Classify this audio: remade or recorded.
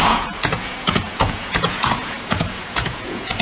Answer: remade